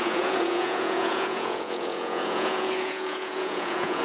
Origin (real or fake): fake